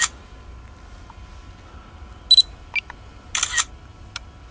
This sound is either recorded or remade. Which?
recorded